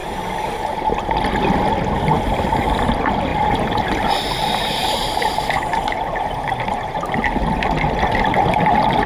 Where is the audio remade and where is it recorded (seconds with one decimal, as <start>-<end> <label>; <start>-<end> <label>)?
0.0-3.3 recorded; 3.3-4.1 remade; 4.1-4.8 recorded; 4.8-7.2 remade; 7.2-9.1 recorded